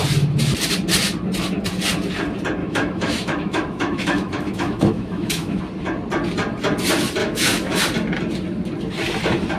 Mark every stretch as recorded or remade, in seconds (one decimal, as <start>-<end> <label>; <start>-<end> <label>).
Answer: 0.0-2.6 recorded; 2.6-5.6 remade; 5.6-7.2 recorded; 7.2-7.8 remade; 7.8-9.6 recorded